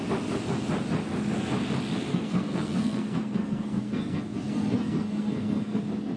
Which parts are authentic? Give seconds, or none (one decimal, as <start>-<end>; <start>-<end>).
0.0-2.1; 5.8-6.2